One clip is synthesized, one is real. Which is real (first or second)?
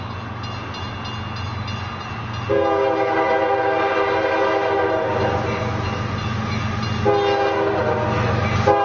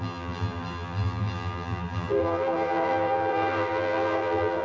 first